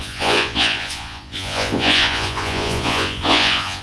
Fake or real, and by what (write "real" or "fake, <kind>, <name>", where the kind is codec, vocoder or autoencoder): fake, vocoder, Vocos